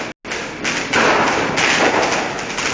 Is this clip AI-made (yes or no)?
no